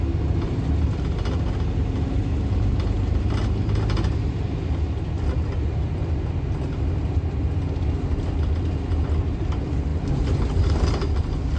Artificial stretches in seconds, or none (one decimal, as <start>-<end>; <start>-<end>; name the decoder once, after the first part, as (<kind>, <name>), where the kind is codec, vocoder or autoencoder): none